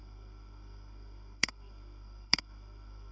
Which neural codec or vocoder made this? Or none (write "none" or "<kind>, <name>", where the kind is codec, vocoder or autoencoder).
codec, SNAC